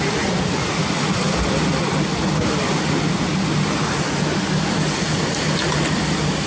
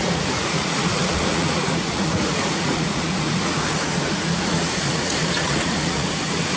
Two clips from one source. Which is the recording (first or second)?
first